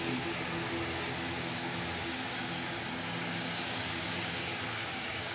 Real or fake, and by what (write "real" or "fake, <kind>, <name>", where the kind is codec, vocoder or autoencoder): fake, codec, DAC